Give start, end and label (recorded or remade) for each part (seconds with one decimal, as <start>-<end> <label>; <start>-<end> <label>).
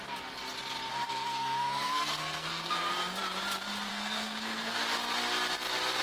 0.0-0.9 recorded; 0.9-2.9 remade; 2.9-3.9 recorded; 3.9-4.8 remade; 4.8-6.0 recorded